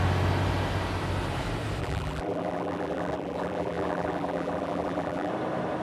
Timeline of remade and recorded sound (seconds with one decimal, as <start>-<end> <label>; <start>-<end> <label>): 0.0-1.8 recorded; 1.8-5.3 remade; 5.3-5.8 recorded